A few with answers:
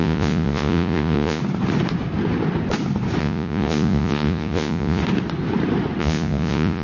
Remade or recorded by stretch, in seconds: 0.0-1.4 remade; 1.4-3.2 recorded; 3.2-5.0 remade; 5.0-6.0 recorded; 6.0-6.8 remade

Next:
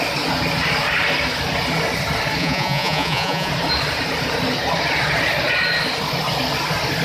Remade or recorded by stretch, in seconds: 0.0-2.4 recorded; 2.4-3.5 remade; 3.5-7.0 recorded

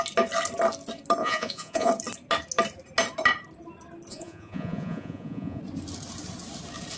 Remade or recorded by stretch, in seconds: 0.0-1.2 recorded; 1.2-1.9 remade; 1.9-4.1 recorded; 4.1-5.6 remade; 5.6-7.0 recorded

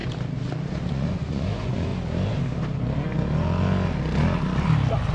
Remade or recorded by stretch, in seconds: 0.0-0.9 recorded; 0.9-1.9 remade; 1.9-5.1 recorded

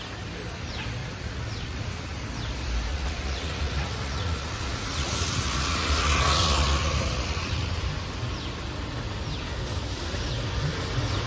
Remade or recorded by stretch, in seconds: 0.0-1.0 recorded; 1.0-2.3 remade; 2.3-2.9 recorded; 2.9-7.8 remade; 7.8-11.3 recorded

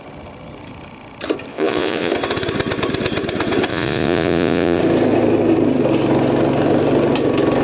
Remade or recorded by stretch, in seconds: 0.0-1.5 recorded; 1.5-2.1 remade; 2.1-3.7 recorded; 3.7-4.8 remade; 4.8-7.6 recorded